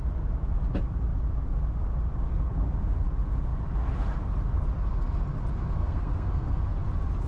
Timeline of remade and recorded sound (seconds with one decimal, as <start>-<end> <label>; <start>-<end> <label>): 0.0-5.8 recorded; 5.8-6.6 remade; 6.6-7.3 recorded